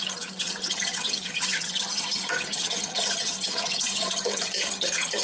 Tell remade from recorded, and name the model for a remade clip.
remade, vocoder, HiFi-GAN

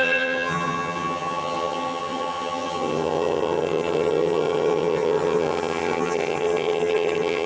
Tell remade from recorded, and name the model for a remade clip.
remade, vocoder, HiFi-GAN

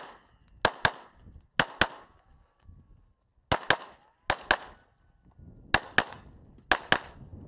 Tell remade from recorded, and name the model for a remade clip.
recorded